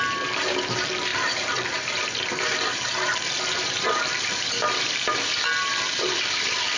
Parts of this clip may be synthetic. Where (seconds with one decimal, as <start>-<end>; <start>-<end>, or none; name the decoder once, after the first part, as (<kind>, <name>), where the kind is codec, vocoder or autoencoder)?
none